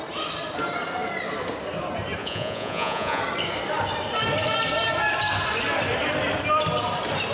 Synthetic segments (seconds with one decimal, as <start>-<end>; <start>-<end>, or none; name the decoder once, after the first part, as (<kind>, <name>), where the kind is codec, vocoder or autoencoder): 2.2-3.2 (vocoder, Vocos)